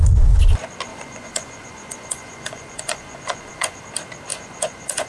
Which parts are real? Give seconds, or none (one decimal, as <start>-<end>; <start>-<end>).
0.0-0.9; 3.8-4.3